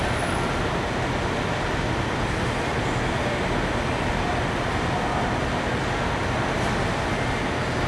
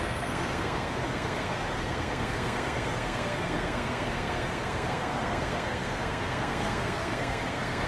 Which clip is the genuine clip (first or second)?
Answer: first